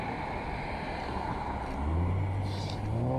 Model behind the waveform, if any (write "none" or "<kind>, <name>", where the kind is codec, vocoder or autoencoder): none